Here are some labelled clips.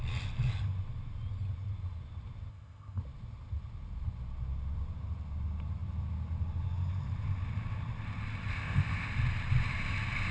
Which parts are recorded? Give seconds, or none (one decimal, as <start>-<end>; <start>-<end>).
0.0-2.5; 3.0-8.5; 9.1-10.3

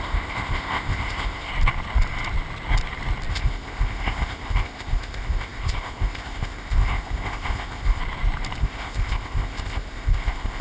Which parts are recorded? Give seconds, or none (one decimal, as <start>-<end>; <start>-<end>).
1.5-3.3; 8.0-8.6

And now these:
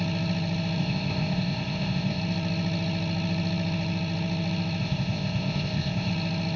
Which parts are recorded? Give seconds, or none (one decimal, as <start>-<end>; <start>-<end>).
0.0-0.8; 2.2-4.8; 6.1-6.6

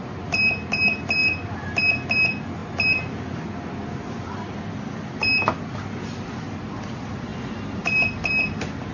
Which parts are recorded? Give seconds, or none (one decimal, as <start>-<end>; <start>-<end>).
0.0-8.9